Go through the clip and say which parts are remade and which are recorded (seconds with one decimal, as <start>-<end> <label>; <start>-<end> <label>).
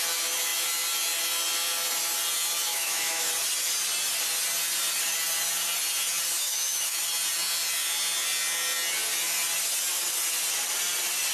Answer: 0.0-2.7 recorded; 2.7-3.3 remade; 3.3-6.4 recorded; 6.4-7.0 remade; 7.0-11.3 recorded